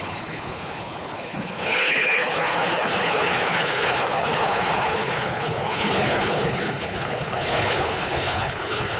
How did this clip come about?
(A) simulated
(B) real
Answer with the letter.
A